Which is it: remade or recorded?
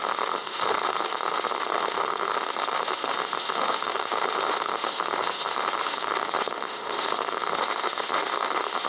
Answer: remade